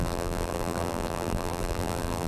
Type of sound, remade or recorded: remade